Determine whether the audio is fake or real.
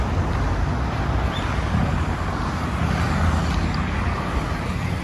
real